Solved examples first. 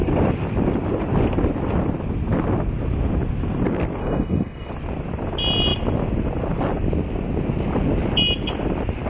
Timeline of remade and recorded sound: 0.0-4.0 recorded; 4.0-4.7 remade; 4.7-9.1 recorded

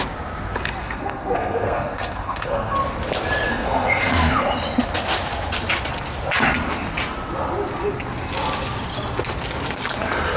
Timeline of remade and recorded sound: 0.0-0.8 recorded; 0.8-2.8 remade; 2.8-3.5 recorded; 3.5-4.1 remade; 4.1-10.4 recorded

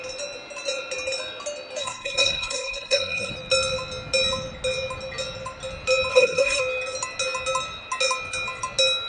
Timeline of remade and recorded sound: 0.0-1.8 recorded; 1.8-3.3 remade; 3.3-6.1 recorded; 6.1-6.6 remade; 6.6-9.1 recorded

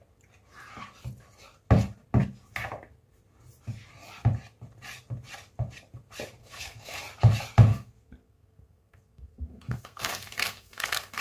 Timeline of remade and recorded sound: 0.0-6.4 recorded; 6.4-7.0 remade; 7.0-7.7 recorded; 7.7-11.2 remade

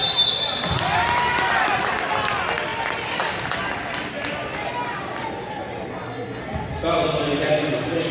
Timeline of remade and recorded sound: 0.0-5.9 recorded; 5.9-6.4 remade; 6.4-8.1 recorded

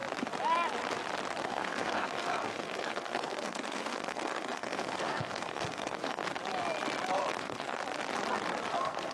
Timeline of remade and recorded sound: 0.0-1.4 recorded; 1.4-6.2 remade; 6.2-7.3 recorded; 7.3-7.8 remade; 7.8-8.7 recorded; 8.7-9.1 remade

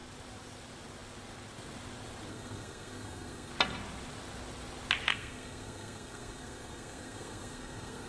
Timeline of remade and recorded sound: 0.0-2.3 recorded; 2.3-3.5 remade; 3.5-5.1 recorded; 5.1-8.1 remade

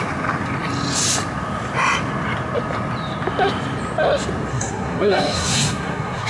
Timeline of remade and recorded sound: 0.0-4.5 recorded; 4.5-6.3 remade